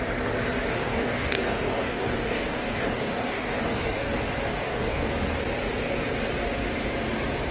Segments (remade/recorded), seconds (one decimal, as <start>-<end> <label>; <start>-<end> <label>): 0.0-0.7 recorded; 0.7-4.1 remade; 4.1-4.5 recorded; 4.5-5.1 remade; 5.1-7.5 recorded